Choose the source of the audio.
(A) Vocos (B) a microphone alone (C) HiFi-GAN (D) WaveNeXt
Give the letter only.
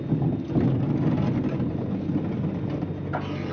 B